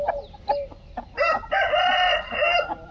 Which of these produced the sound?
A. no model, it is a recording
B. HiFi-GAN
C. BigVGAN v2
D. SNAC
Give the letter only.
A